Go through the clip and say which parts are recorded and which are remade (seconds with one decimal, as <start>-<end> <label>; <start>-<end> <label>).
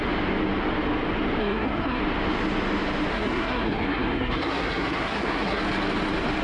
0.0-1.4 recorded; 1.4-2.0 remade; 2.0-3.1 recorded; 3.1-5.6 remade; 5.6-6.4 recorded